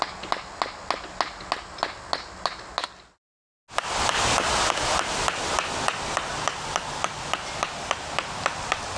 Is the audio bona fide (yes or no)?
yes